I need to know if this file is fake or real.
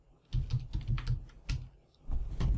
real